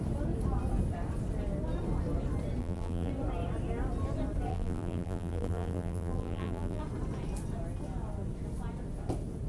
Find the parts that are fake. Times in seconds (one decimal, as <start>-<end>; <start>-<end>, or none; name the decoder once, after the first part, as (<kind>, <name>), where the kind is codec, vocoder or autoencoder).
2.6-3.1 (vocoder, BigVGAN v2); 4.5-6.8